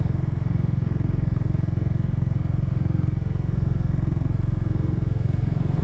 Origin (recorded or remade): remade